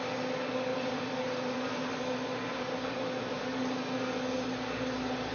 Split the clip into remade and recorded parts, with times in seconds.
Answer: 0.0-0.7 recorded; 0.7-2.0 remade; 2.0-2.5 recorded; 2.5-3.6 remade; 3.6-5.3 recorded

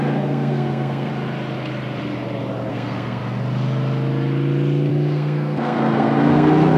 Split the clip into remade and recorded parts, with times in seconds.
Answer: 0.0-1.1 remade; 1.1-2.7 recorded; 2.7-3.2 remade; 3.2-4.9 recorded; 4.9-6.8 remade

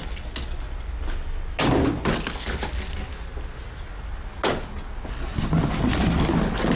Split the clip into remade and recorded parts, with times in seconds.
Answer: 0.0-6.8 recorded

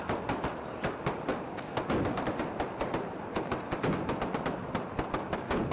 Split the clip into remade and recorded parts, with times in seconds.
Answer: 0.0-5.7 recorded

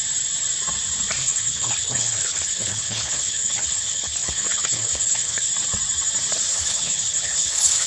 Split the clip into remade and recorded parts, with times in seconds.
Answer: 0.0-1.2 recorded; 1.2-5.5 remade; 5.5-6.5 recorded; 6.5-7.9 remade

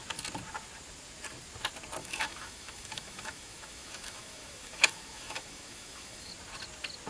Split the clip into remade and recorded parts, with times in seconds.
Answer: 0.0-2.0 recorded; 2.0-6.3 remade; 6.3-7.1 recorded